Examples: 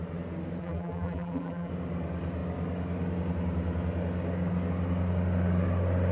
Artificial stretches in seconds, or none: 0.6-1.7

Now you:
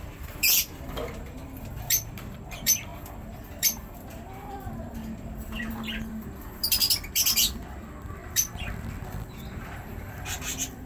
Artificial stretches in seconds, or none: 0.0-10.9

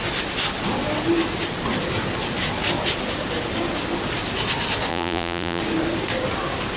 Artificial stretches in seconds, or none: 4.9-5.6

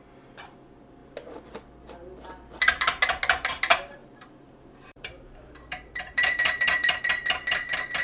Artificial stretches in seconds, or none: 4.0-7.0